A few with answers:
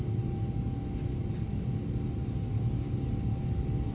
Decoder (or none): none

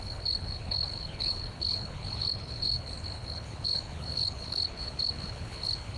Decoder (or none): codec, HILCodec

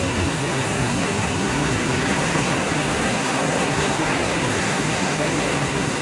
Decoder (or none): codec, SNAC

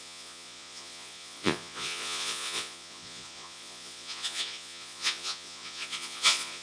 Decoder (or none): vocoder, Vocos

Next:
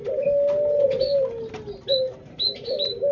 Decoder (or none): none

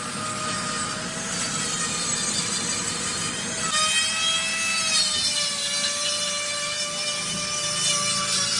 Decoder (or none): none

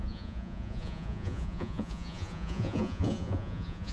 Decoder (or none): vocoder, Vocos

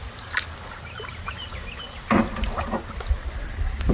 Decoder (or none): none